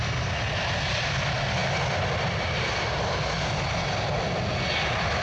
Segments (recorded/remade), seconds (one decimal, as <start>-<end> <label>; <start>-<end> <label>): 0.0-5.2 recorded